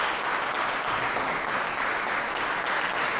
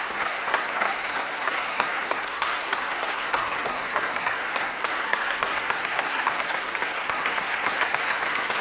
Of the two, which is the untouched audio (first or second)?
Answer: first